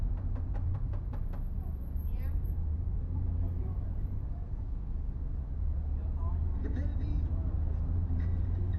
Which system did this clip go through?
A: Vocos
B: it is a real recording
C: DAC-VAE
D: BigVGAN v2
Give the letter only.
A